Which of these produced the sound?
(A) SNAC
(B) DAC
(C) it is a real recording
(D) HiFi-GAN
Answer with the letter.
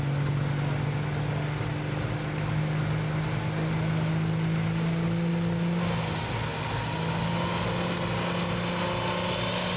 C